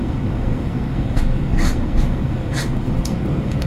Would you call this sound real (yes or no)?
no